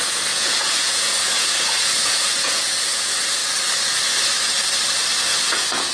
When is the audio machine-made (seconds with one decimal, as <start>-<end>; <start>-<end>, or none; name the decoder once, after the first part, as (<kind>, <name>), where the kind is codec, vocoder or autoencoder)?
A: 0.0-3.4 (vocoder, Vocos); 5.2-5.9